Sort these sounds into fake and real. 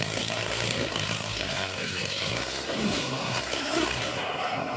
fake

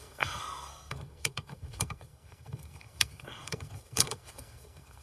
fake